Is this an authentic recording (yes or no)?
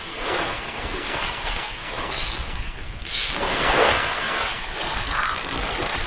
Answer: no